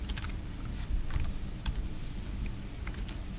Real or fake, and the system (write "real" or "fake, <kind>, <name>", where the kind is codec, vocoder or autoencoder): real